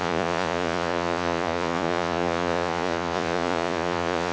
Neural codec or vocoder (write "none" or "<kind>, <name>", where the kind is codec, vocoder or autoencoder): vocoder, Vocos